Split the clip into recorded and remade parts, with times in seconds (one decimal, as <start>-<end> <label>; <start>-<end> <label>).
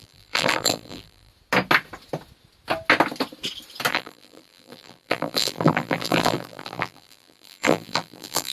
0.0-1.3 remade; 1.3-3.9 recorded; 3.9-8.5 remade